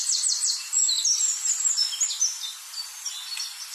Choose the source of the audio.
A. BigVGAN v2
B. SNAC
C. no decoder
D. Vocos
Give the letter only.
A